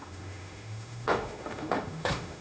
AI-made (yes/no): yes